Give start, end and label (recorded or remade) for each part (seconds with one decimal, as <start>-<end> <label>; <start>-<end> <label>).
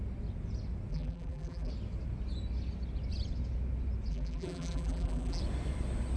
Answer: 0.0-0.9 recorded; 0.9-1.7 remade; 1.7-4.1 recorded; 4.1-5.4 remade; 5.4-6.2 recorded